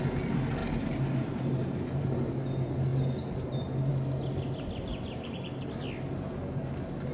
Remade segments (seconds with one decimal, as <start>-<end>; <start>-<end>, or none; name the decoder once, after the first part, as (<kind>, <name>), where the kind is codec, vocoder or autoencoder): 0.6-2.3 (vocoder, BigVGAN v2); 4.9-5.5